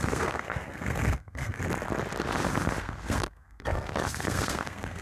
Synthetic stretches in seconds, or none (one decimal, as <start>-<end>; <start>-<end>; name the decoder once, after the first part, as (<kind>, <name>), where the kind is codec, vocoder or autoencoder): 0.0-1.6 (codec, SNAC); 2.8-5.0